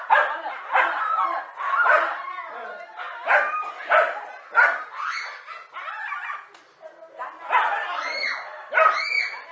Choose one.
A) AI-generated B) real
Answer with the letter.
B